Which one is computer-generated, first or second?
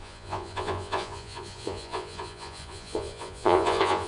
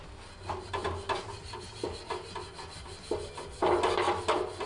first